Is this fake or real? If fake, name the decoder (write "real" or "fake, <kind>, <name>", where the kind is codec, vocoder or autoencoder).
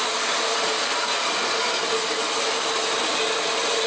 real